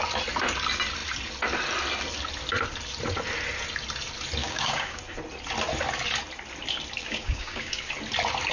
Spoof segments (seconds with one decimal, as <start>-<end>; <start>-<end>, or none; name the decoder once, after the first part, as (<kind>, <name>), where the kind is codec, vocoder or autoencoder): 4.4-5.0 (codec, DAC); 7.0-7.9